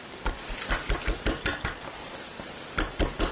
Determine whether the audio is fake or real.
fake